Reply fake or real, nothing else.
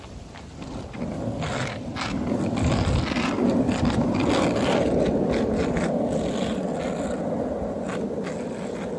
real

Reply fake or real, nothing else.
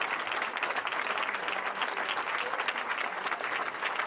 real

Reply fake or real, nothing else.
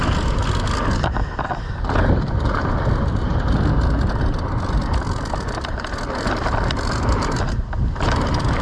real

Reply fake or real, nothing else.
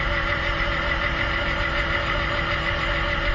real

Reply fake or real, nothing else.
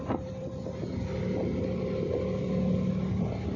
real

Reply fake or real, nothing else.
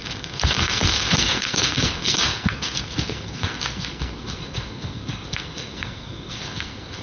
fake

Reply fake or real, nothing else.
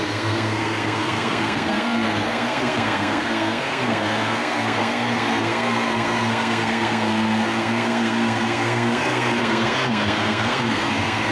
fake